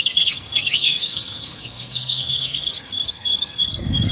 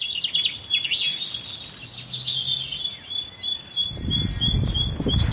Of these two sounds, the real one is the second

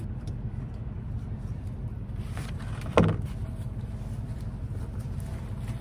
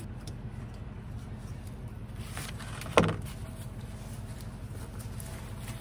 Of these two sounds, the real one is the second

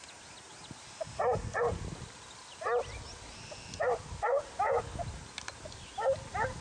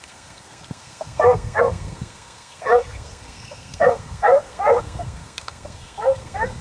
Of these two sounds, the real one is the first